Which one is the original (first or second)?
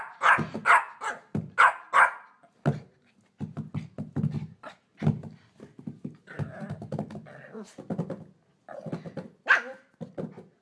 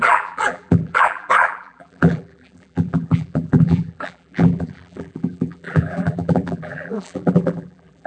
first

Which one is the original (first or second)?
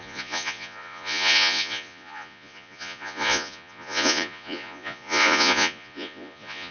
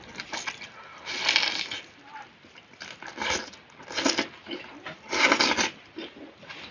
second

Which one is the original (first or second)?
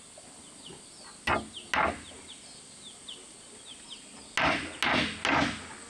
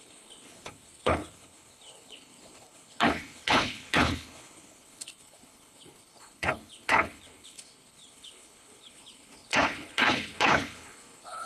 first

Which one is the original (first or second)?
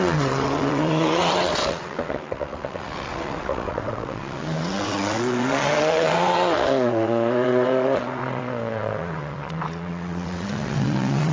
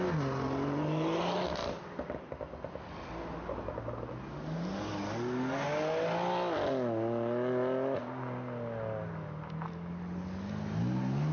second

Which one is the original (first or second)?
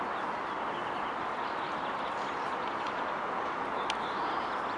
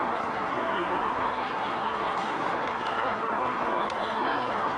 first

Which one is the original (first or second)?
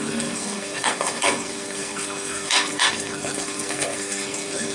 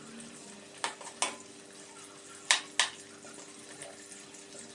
second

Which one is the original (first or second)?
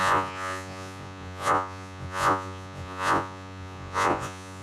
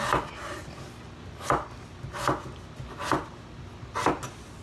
second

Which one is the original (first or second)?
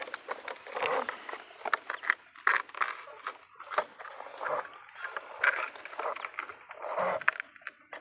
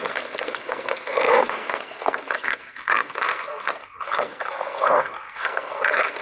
first